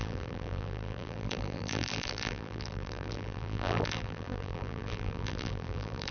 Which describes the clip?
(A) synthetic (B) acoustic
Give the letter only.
A